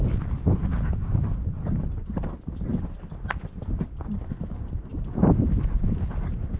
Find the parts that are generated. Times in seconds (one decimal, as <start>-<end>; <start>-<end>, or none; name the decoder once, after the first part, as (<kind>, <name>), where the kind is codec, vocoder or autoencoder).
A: 4.9-5.5 (vocoder, BigVGAN v2)